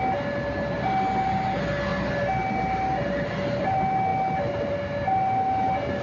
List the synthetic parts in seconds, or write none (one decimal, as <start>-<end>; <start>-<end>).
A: none